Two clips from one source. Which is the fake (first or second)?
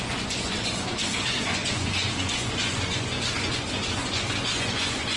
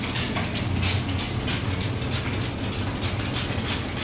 first